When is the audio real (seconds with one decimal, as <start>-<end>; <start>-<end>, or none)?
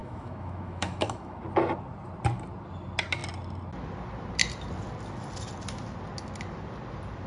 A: 1.4-7.3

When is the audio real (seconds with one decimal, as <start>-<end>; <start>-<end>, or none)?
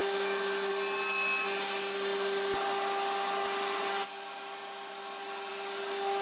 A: 0.7-6.2